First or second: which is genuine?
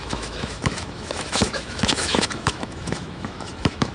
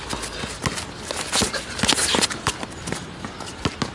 second